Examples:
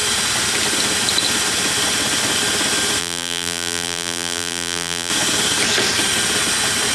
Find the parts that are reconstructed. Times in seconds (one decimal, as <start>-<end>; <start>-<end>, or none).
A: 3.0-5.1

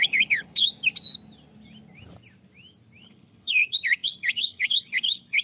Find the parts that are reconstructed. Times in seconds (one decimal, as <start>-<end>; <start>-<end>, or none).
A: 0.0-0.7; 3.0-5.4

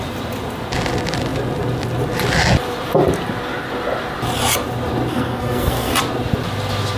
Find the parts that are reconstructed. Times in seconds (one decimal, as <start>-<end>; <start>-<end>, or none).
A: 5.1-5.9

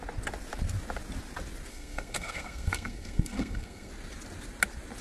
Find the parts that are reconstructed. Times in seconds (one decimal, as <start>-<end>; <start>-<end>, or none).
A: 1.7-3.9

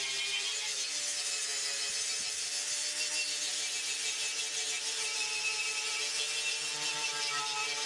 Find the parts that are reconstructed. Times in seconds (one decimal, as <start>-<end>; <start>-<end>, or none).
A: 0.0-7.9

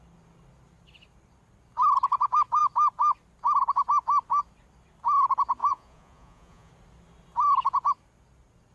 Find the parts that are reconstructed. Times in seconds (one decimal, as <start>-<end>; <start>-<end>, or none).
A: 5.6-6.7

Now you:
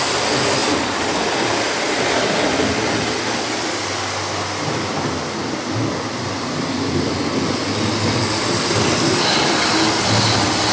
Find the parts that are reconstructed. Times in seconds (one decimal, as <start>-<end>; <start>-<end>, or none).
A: none